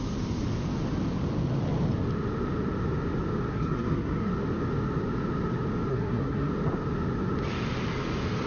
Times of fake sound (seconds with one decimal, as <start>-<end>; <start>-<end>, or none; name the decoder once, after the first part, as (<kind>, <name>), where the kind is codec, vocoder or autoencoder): 3.5-4.3 (codec, SNAC); 5.9-6.5